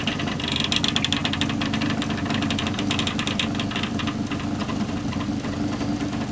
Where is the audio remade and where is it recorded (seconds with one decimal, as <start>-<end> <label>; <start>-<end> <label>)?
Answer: 0.0-4.6 recorded; 4.6-5.1 remade; 5.1-6.3 recorded